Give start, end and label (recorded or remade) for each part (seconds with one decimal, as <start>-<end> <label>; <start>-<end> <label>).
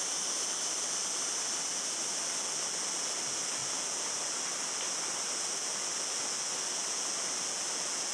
0.0-8.1 recorded